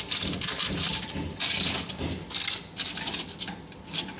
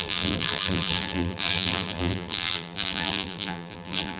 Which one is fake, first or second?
second